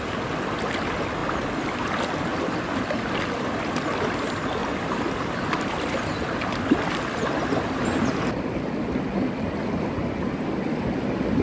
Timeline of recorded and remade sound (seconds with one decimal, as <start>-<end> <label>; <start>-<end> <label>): 0.0-1.2 recorded; 1.2-1.9 remade; 1.9-2.3 recorded; 2.3-3.1 remade; 3.1-4.6 recorded; 4.6-9.5 remade; 9.5-11.4 recorded